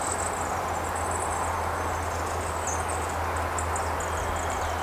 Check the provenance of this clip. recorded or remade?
recorded